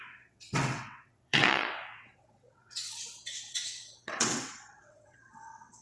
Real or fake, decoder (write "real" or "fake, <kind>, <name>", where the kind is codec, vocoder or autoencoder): fake, vocoder, WaveNeXt